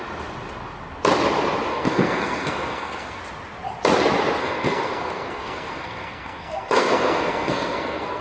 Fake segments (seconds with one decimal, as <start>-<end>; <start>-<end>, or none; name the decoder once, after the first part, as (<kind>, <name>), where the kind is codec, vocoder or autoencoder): 1.7-3.2 (codec, SNAC); 4.4-8.2